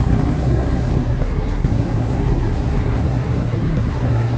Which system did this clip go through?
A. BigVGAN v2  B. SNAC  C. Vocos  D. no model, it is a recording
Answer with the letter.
B